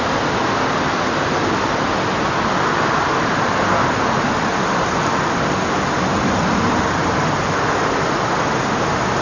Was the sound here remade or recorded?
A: recorded